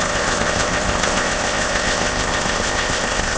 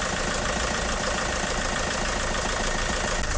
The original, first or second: second